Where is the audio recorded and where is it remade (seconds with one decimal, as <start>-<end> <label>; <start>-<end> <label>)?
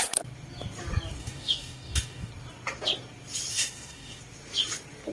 0.0-1.2 recorded; 1.2-2.3 remade; 2.3-3.5 recorded; 3.5-4.2 remade; 4.2-5.1 recorded